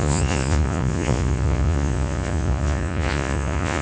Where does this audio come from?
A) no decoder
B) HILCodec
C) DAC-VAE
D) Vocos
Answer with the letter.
D